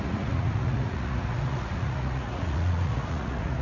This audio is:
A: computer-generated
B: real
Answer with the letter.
A